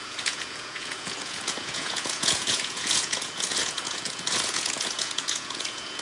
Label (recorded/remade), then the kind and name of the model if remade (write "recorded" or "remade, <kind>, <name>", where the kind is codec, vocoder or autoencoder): remade, vocoder, Vocos